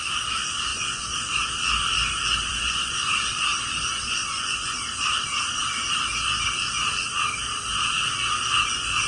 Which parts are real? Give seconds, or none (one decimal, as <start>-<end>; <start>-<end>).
0.0-0.7; 1.5-2.5; 3.4-3.8; 4.8-9.1